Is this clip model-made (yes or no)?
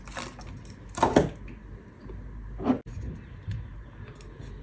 no